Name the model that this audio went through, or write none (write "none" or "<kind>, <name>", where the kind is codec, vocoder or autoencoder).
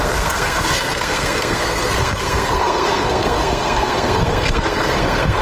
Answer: codec, SNAC